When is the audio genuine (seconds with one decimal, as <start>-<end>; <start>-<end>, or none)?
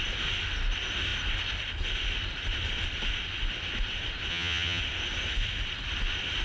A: 0.0-4.3; 4.8-6.4